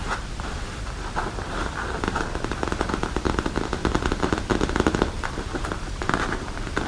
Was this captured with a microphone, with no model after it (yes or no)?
no